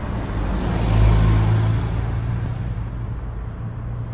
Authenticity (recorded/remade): recorded